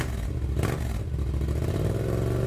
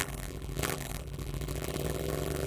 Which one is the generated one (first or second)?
second